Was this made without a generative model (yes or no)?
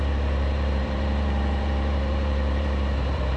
no